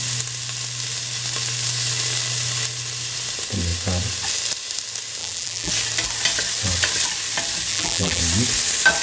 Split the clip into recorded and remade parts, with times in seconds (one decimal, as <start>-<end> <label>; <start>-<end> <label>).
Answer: 0.0-5.2 recorded; 5.2-5.7 remade; 5.7-7.7 recorded; 7.7-8.2 remade; 8.2-9.0 recorded

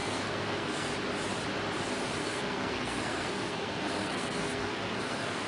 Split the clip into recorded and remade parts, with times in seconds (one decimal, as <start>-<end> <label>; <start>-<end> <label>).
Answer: 0.0-0.9 remade; 0.9-2.2 recorded; 2.2-5.5 remade

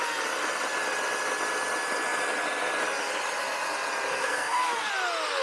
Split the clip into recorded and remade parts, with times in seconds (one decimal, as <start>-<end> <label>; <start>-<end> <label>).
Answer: 0.0-4.1 recorded; 4.1-4.9 remade; 4.9-5.4 recorded

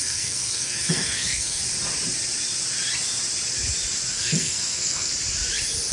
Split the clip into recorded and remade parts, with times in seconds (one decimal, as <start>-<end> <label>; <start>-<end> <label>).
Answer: 0.0-1.6 remade; 1.6-4.1 recorded; 4.1-5.1 remade; 5.1-5.9 recorded

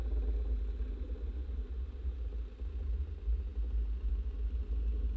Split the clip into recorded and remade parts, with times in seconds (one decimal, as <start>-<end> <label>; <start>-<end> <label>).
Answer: 0.0-5.2 recorded

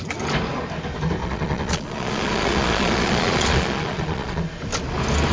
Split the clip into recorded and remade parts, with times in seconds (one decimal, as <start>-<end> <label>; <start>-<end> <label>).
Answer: 0.0-1.2 recorded; 1.2-4.4 remade; 4.4-5.3 recorded